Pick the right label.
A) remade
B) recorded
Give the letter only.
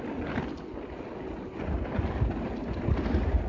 B